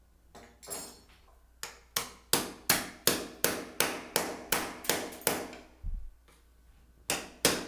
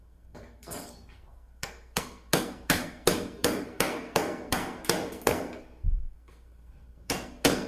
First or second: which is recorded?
first